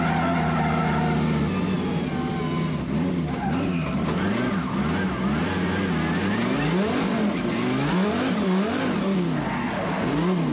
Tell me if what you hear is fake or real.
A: real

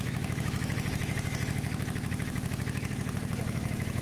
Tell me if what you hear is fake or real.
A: fake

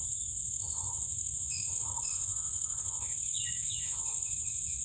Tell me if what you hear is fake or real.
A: fake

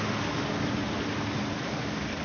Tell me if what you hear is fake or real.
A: real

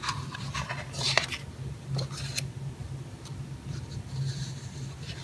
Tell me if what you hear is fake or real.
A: real